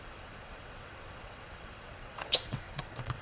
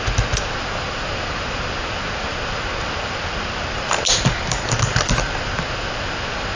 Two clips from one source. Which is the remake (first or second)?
first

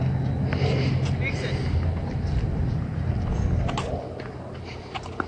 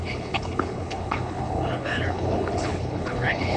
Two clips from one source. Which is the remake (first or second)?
second